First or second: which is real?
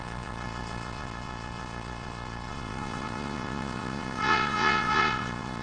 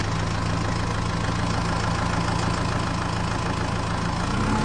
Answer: second